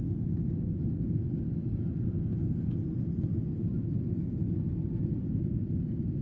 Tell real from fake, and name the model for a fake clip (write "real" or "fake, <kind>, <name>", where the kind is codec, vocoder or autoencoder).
real